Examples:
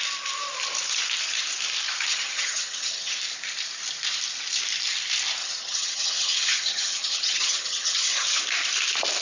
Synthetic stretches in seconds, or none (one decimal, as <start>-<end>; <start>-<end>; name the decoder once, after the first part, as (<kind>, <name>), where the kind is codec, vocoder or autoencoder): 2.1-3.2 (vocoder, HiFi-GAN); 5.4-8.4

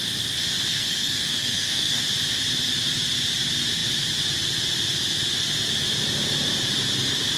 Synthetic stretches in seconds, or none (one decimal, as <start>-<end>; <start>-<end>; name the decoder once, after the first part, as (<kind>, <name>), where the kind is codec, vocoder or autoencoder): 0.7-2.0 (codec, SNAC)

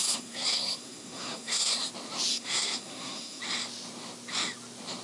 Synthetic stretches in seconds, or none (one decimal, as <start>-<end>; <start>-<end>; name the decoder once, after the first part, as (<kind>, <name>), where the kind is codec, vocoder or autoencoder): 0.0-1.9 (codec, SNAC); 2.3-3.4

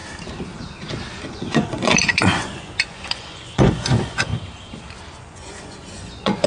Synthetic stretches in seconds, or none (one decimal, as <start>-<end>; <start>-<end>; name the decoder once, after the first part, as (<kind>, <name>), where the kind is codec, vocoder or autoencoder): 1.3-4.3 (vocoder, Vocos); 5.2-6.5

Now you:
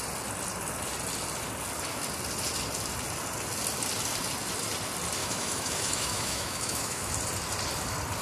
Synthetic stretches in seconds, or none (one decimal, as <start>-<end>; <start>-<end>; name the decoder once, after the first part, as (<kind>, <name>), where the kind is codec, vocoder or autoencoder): 5.2-7.1 (autoencoder, DAC-VAE)

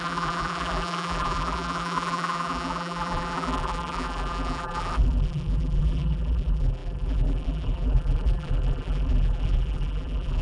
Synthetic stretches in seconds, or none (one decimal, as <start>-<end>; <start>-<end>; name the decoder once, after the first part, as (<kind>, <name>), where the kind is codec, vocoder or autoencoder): 0.0-10.4 (vocoder, BigVGAN v2)

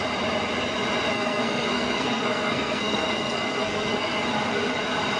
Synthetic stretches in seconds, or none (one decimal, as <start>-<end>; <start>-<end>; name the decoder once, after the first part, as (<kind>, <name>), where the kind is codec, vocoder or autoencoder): 1.1-4.2 (codec, SNAC)